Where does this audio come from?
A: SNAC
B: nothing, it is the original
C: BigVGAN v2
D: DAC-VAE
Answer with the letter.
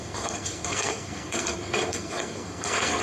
A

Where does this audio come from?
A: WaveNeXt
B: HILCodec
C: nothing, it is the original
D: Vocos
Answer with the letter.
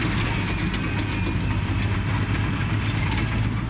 C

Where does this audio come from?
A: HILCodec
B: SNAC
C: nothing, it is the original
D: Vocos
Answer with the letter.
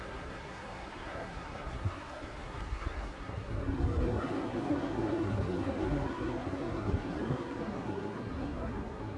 B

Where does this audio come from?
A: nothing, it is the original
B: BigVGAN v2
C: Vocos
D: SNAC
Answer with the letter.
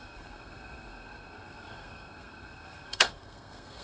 D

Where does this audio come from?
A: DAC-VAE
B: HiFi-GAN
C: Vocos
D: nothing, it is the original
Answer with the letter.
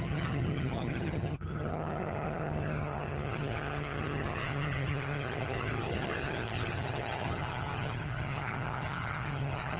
B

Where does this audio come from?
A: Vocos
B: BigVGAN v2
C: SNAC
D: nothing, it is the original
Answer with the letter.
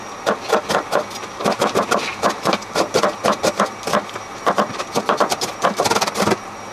D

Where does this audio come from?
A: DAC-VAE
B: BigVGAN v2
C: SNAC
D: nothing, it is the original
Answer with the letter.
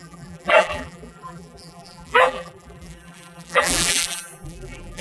B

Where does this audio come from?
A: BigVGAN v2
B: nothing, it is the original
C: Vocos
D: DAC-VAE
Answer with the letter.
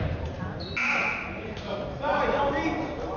B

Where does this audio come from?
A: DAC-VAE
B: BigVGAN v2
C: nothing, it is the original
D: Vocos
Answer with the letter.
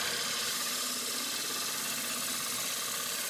C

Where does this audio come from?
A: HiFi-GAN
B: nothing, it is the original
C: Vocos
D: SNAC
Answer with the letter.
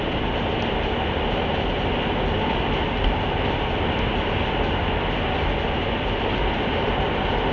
B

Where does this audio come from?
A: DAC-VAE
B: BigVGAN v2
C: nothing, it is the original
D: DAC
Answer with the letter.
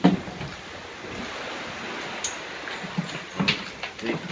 C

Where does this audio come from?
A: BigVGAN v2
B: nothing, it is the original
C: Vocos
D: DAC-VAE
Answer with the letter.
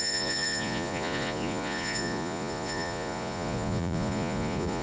C